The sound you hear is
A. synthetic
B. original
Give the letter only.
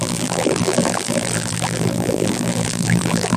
A